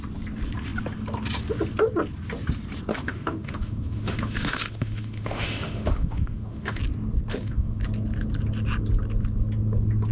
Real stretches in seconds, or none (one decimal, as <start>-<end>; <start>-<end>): 0.0-2.9; 6.8-7.3; 7.8-10.1